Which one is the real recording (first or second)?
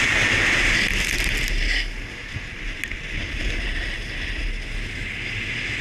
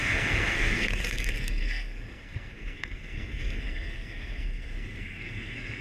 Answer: first